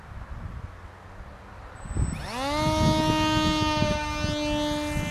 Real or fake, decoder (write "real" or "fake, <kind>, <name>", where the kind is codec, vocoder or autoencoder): real